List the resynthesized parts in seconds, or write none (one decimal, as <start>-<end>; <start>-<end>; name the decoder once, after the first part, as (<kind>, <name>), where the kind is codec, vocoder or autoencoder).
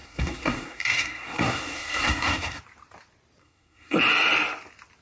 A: 0.0-2.6 (codec, SNAC); 3.4-4.0